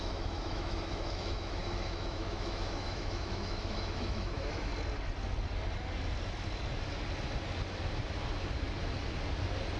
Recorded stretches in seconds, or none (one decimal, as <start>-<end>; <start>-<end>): 4.7-9.8

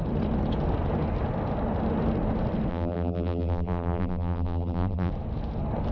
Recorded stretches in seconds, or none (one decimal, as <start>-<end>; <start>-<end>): 0.0-2.7; 5.1-5.9

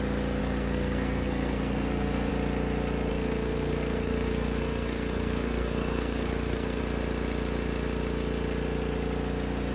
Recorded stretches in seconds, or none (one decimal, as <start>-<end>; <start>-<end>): 0.0-0.4; 2.3-3.1; 6.8-9.7

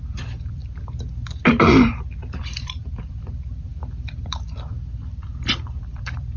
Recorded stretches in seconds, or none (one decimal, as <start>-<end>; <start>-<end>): 0.6-2.4

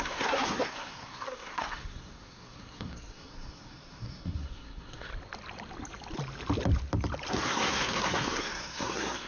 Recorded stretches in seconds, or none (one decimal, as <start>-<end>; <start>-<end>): 5.1-7.3

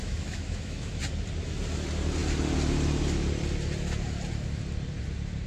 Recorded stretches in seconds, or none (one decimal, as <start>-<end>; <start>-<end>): 1.0-5.5

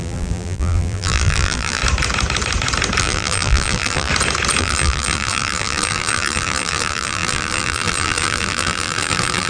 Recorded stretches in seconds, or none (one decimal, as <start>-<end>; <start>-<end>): 1.8-3.0; 4.1-4.6